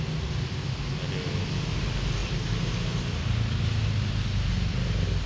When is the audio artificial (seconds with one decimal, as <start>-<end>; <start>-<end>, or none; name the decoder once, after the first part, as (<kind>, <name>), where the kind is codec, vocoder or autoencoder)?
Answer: none